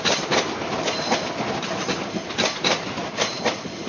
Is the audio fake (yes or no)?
no